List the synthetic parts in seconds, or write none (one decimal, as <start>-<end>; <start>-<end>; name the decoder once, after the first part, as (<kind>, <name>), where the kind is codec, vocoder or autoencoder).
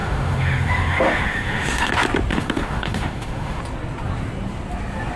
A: 0.0-1.9 (autoencoder, DAC-VAE); 2.3-3.6